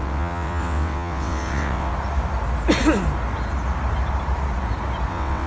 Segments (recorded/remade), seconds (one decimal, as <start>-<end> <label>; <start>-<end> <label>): 0.0-1.9 remade; 1.9-5.1 recorded; 5.1-5.5 remade

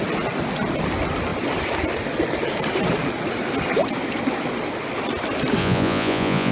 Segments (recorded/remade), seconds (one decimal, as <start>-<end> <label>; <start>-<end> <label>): 0.0-5.6 recorded; 5.6-6.5 remade

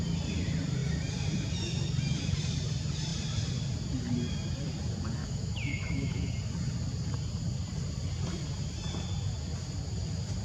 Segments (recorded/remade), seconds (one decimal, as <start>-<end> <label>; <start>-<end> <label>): 0.0-5.2 recorded; 5.2-6.3 remade; 6.3-10.4 recorded